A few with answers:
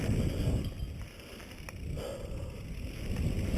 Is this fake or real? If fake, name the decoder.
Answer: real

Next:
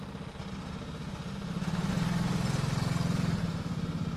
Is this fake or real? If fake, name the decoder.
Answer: real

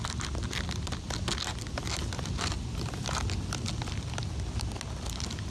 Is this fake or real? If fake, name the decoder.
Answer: real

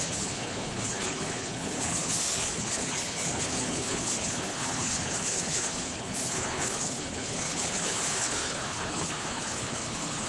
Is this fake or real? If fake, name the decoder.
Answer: fake, codec, HILCodec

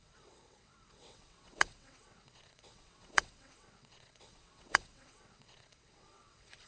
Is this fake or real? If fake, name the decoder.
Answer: fake, vocoder, WaveNeXt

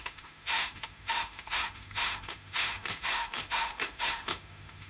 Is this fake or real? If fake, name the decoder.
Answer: fake, autoencoder, DAC-VAE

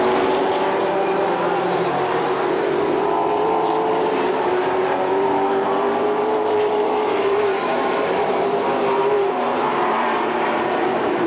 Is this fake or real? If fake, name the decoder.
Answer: fake, vocoder, BigVGAN v2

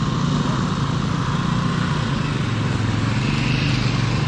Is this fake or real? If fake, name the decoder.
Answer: real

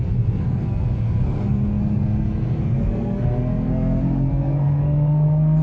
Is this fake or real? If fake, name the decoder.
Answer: fake, codec, SNAC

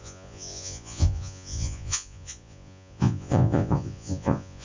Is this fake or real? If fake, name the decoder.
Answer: fake, vocoder, Vocos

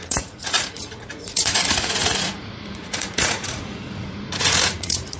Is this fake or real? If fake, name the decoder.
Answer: fake, vocoder, Vocos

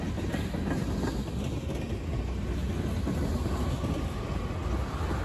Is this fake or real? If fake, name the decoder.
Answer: real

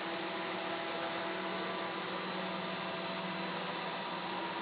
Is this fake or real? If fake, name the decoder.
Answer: real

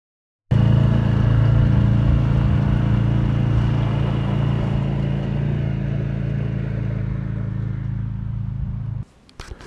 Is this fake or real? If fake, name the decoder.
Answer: real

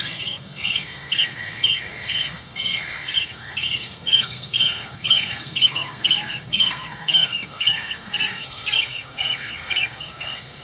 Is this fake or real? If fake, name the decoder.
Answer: fake, codec, SNAC